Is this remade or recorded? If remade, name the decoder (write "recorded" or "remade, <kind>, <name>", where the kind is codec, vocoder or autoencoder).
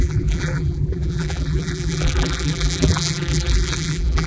remade, vocoder, BigVGAN v2